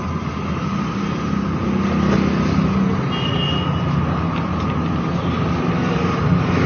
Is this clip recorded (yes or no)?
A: yes